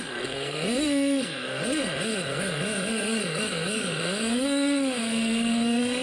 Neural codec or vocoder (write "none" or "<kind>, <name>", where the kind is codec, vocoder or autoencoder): codec, SNAC